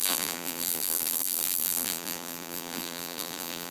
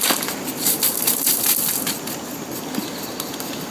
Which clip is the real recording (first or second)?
second